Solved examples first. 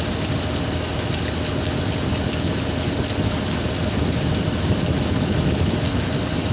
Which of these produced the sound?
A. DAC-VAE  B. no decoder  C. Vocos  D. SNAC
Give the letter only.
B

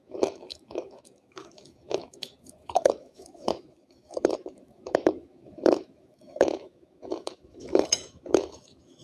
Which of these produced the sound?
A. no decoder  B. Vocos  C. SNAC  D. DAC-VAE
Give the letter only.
D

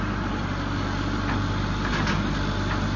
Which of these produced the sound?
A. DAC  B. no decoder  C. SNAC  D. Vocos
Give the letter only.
B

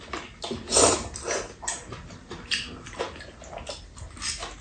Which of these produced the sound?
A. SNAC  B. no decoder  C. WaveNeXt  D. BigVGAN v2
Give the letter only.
B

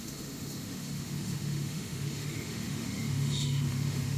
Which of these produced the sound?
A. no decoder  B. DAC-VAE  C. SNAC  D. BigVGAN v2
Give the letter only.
B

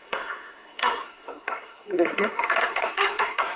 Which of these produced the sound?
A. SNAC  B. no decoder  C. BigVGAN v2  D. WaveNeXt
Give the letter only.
A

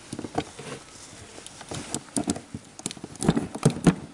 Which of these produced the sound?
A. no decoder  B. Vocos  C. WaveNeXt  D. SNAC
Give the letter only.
A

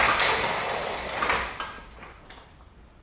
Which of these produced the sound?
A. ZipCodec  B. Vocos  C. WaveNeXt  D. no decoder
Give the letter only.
D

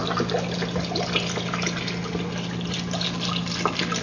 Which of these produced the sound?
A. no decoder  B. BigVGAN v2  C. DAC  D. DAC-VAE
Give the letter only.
A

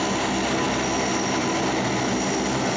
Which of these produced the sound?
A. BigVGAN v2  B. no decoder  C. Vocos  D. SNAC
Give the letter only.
B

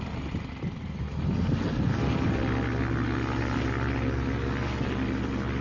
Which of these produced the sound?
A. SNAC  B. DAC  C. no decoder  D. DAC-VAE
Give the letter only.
C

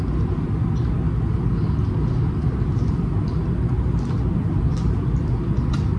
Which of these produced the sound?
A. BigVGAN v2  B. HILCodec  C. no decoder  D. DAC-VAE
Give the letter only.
C